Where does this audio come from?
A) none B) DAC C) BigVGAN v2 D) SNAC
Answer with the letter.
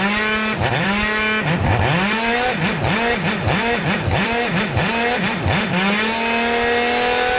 A